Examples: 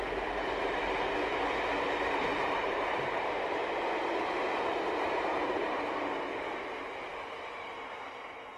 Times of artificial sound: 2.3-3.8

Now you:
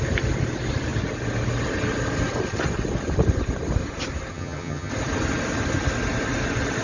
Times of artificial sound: 4.3-4.9